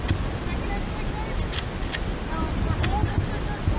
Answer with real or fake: real